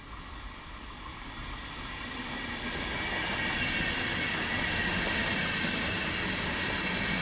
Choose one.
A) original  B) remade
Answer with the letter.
A